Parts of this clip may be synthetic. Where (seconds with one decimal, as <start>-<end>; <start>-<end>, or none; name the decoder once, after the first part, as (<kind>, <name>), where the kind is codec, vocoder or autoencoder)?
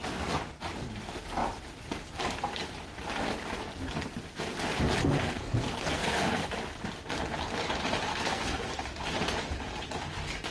5.0-6.5 (codec, SNAC); 8.1-8.7